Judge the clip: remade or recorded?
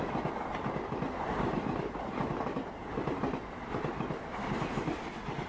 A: recorded